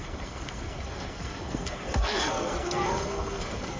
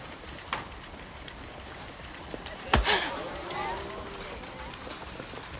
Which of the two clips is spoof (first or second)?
first